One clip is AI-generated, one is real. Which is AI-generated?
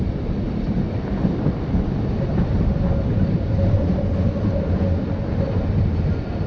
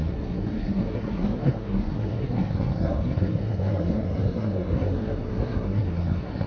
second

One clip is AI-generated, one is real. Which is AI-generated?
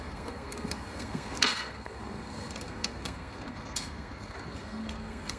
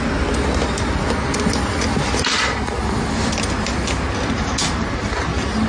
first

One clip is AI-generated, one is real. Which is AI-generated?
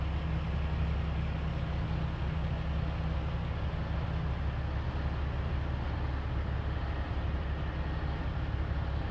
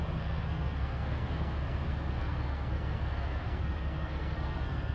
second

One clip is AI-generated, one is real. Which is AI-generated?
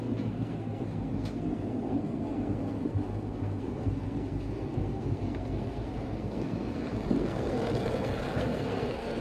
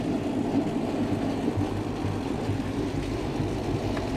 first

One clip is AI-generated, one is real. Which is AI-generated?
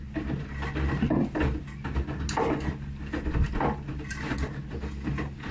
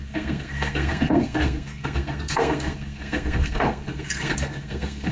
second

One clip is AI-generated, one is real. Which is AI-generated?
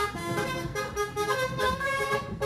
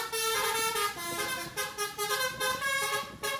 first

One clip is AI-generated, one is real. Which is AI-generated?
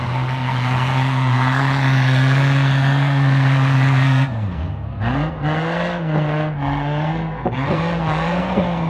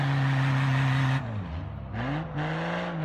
first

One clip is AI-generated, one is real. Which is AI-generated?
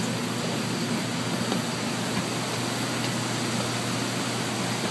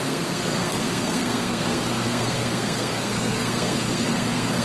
second